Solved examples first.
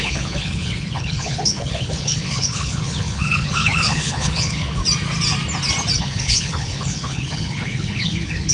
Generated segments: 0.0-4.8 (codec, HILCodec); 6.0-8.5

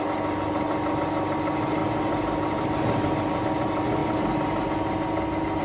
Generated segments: none

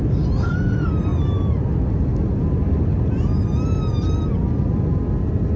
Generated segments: none

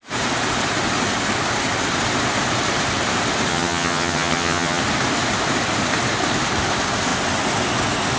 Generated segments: 3.5-4.8 (vocoder, HiFi-GAN)

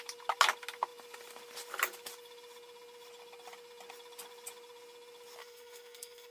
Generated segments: 5.4-6.3 (codec, SNAC)